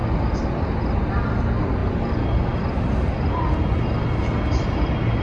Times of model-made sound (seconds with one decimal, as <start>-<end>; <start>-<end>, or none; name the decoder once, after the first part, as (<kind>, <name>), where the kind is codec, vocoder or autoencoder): none